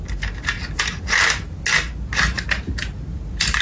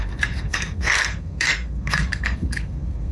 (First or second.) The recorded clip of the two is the first